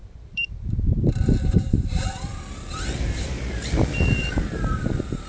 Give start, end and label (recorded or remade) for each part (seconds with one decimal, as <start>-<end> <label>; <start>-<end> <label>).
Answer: 0.0-5.3 remade